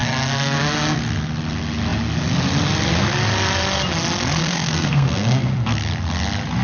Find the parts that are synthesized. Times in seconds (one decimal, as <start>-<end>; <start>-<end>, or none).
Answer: 0.0-1.0; 4.4-5.5